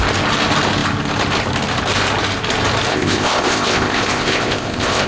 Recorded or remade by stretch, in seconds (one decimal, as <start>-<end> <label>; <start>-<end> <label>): 0.0-2.9 recorded; 2.9-5.1 remade